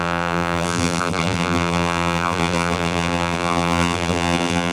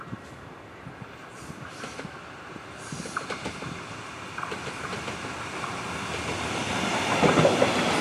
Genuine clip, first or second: second